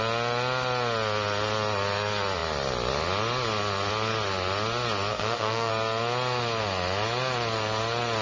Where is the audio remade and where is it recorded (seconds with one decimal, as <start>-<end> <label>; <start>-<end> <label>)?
0.0-5.1 recorded; 5.1-5.7 remade; 5.7-8.2 recorded